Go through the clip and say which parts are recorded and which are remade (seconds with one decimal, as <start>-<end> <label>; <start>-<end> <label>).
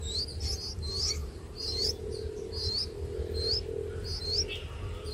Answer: 0.0-1.2 recorded; 1.2-2.5 remade; 2.5-5.1 recorded